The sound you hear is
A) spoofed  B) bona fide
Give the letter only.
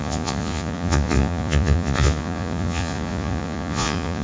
A